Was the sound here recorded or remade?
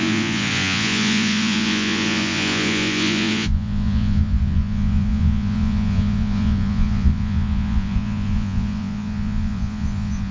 remade